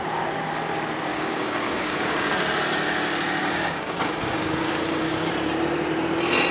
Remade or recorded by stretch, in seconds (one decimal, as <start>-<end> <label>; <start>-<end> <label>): 0.0-1.1 recorded; 1.1-2.3 remade; 2.3-3.4 recorded; 3.4-5.3 remade; 5.3-6.5 recorded